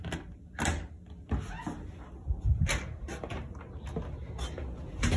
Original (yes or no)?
yes